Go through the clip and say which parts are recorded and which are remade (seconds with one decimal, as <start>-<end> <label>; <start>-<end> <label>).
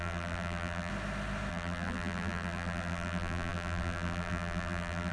0.0-0.9 remade; 0.9-1.5 recorded; 1.5-5.1 remade